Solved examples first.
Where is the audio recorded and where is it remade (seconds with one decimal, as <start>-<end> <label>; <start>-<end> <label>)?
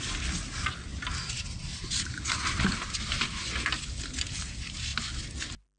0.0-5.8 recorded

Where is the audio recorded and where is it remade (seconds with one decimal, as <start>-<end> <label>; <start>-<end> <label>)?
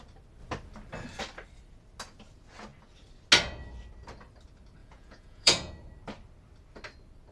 0.0-4.8 recorded; 4.8-5.7 remade; 5.7-7.3 recorded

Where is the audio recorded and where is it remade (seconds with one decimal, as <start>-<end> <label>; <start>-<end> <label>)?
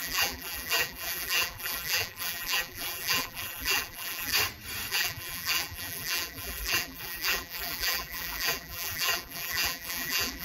0.0-4.3 remade; 4.3-4.9 recorded; 4.9-10.4 remade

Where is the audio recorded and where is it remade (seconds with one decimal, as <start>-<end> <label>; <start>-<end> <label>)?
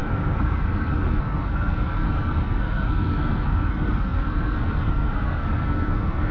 0.0-6.3 remade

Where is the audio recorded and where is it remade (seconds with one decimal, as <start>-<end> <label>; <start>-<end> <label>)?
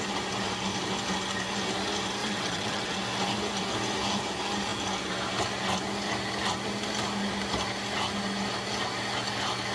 0.0-2.2 recorded; 2.2-3.0 remade; 3.0-9.7 recorded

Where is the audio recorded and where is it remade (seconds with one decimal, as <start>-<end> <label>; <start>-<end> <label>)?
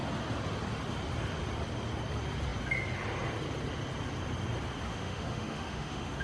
0.0-4.9 recorded; 4.9-6.2 remade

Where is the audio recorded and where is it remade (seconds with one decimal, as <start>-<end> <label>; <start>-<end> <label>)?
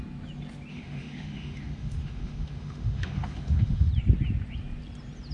0.0-0.7 recorded; 0.7-3.9 remade; 3.9-5.3 recorded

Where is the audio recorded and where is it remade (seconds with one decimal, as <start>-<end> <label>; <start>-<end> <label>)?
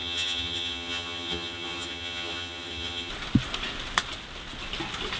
0.0-3.1 remade; 3.1-5.2 recorded